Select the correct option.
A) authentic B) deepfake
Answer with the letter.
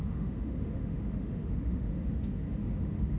B